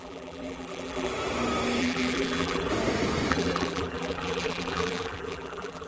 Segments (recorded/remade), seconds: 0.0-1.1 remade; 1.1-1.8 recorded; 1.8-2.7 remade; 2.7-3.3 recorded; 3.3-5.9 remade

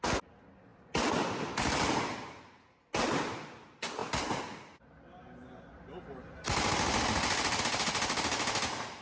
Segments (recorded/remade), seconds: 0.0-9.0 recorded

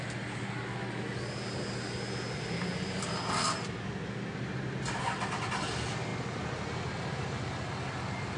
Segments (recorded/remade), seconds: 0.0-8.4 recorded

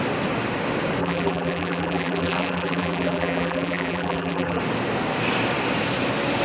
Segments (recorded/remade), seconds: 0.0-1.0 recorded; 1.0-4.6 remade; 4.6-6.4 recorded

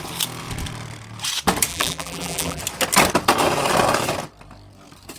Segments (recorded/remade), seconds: 0.0-1.7 recorded; 1.7-2.6 remade; 2.6-5.2 recorded